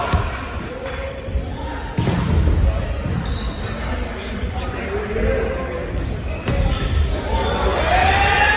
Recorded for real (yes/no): yes